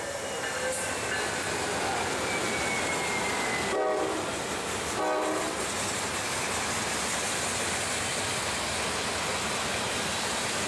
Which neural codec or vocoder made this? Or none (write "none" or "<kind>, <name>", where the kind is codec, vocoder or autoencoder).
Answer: none